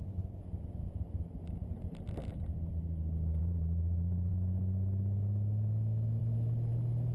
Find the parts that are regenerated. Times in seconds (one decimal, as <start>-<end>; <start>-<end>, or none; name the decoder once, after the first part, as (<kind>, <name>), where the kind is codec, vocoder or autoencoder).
none